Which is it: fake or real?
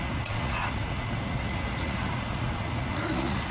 fake